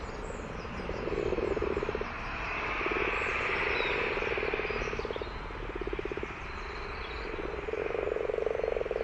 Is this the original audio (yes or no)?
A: yes